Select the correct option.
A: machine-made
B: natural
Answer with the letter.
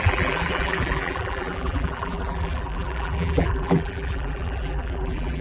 A